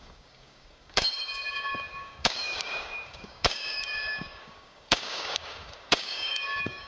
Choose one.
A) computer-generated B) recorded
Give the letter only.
A